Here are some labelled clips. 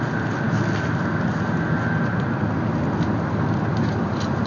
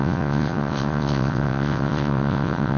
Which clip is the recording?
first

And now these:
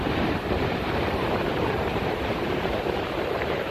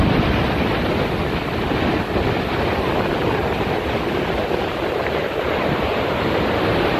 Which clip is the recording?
second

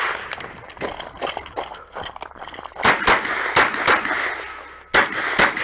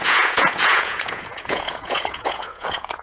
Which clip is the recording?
first